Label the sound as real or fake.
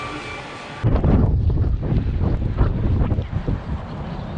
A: real